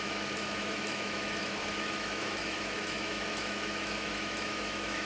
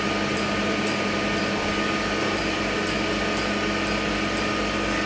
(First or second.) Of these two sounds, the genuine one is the second